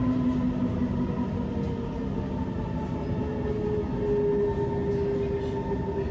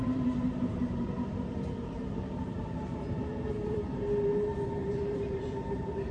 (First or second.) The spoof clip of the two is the second